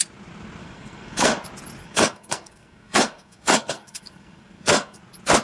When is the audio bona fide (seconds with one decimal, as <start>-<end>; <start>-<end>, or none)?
0.0-0.6; 1.4-1.8; 5.0-5.4